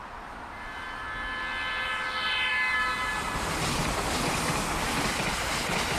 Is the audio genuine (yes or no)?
yes